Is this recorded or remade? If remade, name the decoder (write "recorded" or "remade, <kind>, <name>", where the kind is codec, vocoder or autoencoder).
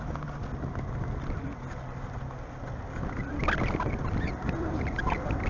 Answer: recorded